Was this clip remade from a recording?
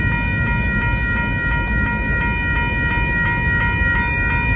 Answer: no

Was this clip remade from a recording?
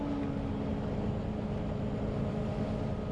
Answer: no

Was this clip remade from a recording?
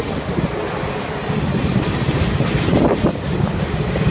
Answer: no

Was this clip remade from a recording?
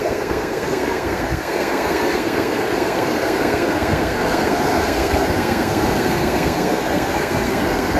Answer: yes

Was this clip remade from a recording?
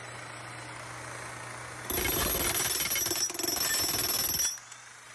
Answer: no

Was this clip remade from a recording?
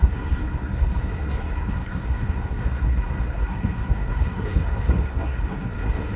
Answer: yes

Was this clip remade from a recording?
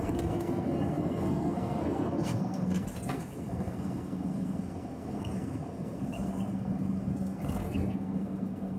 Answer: yes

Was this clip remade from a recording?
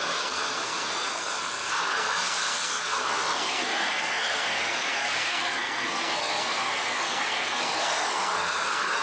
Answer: yes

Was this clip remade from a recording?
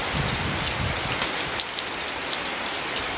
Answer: no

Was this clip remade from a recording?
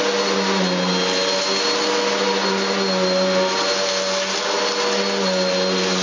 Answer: no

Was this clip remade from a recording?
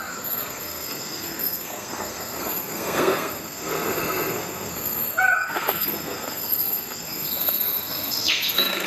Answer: yes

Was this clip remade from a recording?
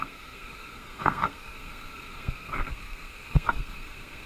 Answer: yes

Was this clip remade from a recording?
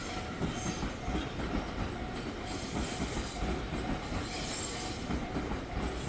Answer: no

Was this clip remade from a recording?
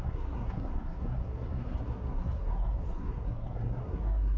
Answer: yes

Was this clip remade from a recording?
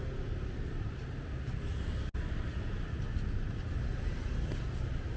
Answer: no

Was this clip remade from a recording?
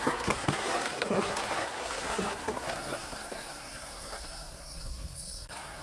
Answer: yes